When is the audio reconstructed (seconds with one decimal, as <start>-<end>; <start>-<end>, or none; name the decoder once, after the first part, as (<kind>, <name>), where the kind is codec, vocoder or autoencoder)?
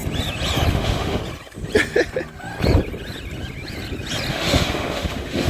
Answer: 0.7-1.2 (autoencoder, DAC-VAE); 4.3-5.5